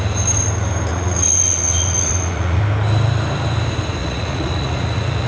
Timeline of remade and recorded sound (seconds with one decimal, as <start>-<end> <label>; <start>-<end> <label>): 0.0-0.9 recorded; 0.9-2.6 remade; 2.6-4.0 recorded; 4.0-5.3 remade